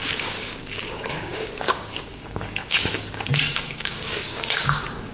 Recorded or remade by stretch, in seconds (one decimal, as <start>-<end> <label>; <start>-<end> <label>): 0.0-5.1 remade